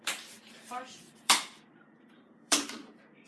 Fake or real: fake